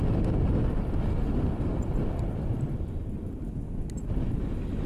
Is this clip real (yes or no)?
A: yes